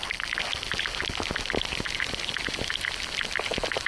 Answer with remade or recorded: recorded